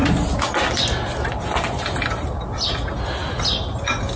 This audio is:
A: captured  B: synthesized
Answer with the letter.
A